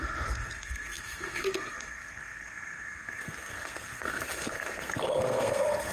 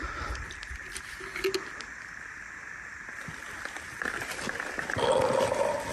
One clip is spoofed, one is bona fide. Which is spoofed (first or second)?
first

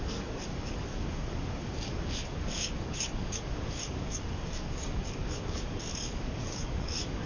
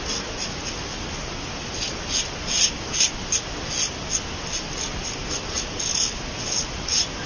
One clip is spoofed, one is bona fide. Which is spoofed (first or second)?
first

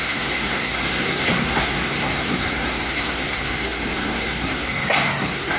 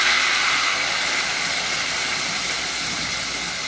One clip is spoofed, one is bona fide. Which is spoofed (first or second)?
first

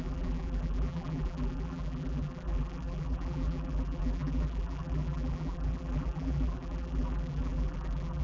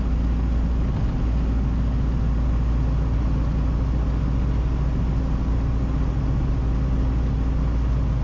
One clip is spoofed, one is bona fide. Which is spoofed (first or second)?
first